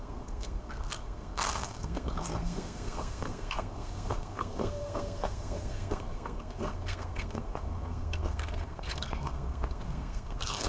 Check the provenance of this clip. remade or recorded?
remade